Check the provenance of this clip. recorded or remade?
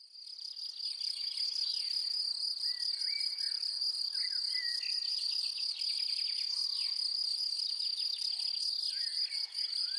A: recorded